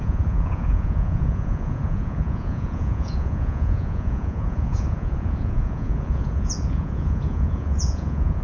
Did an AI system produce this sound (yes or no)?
yes